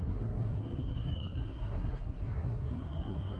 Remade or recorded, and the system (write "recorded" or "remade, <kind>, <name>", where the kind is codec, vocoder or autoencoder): remade, codec, SNAC